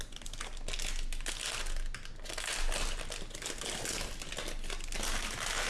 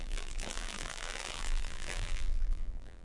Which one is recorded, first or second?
first